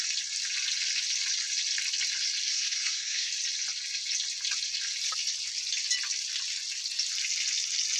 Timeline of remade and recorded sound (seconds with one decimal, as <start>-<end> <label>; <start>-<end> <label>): 0.0-2.5 recorded; 2.5-3.3 remade; 3.3-8.0 recorded